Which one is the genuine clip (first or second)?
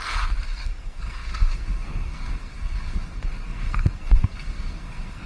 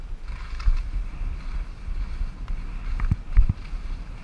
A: second